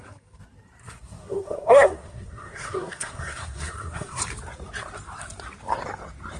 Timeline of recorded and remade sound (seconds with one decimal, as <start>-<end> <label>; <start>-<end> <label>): 0.0-0.8 recorded; 0.8-4.2 remade; 4.2-6.4 recorded